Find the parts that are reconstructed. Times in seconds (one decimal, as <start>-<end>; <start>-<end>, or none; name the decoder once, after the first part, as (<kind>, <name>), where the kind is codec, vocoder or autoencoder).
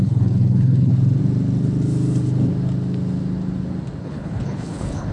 0.0-0.9 (codec, HILCodec); 4.0-5.1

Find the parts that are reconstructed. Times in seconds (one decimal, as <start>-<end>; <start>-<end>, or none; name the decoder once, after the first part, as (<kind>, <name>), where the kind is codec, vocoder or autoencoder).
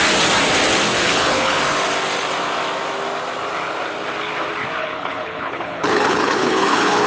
1.0-1.6 (codec, HILCodec); 4.8-7.1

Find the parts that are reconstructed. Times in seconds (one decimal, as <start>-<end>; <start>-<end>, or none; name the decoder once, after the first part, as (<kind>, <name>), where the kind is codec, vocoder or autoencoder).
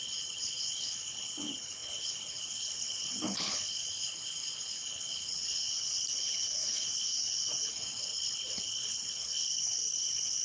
0.0-10.4 (codec, HILCodec)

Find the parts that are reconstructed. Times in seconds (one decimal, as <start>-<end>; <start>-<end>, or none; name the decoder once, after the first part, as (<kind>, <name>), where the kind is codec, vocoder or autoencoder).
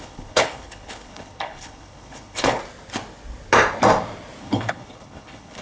0.0-2.6 (codec, HILCodec); 4.4-5.6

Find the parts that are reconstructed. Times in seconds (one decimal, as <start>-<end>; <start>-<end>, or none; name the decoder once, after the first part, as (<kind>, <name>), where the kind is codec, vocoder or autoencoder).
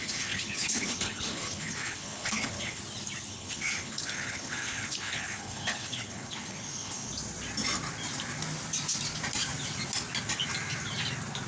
0.0-2.8 (codec, HILCodec); 3.3-7.1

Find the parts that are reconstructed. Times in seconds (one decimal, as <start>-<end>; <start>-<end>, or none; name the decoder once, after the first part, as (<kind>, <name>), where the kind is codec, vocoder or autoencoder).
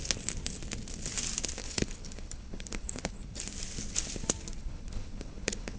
1.6-3.4 (codec, HILCodec); 4.6-5.8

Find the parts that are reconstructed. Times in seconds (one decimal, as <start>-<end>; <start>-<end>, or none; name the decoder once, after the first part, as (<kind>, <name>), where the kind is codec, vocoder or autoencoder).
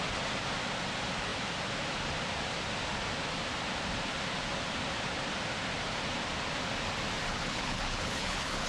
7.3-8.7 (codec, HILCodec)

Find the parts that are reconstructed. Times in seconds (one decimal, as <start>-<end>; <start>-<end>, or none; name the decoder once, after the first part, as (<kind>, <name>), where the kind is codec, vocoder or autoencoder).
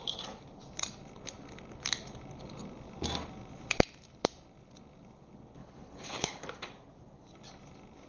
5.6-6.4 (codec, HILCodec)